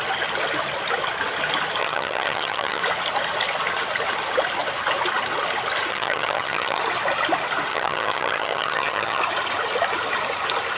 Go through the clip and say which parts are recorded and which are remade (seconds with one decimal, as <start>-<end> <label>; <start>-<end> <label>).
0.0-1.8 recorded; 1.8-2.8 remade; 2.8-5.9 recorded; 5.9-6.8 remade; 6.8-7.7 recorded; 7.7-9.2 remade; 9.2-10.8 recorded

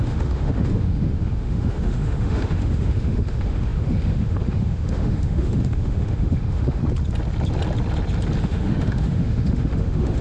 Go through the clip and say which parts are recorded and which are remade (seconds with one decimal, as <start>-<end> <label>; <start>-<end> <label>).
0.0-6.8 remade; 6.8-8.4 recorded; 8.4-10.2 remade

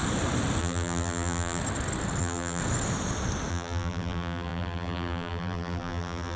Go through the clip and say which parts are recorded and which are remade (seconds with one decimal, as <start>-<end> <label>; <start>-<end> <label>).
0.0-0.6 recorded; 0.6-1.6 remade; 1.6-2.2 recorded; 2.2-2.6 remade; 2.6-3.5 recorded; 3.5-6.4 remade

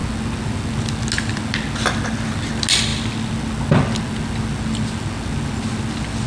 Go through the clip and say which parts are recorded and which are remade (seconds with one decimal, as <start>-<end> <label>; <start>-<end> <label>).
0.0-6.3 recorded

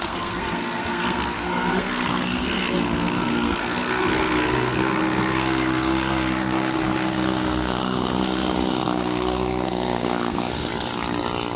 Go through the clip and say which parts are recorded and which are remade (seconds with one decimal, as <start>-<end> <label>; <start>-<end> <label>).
0.0-10.7 remade; 10.7-11.6 recorded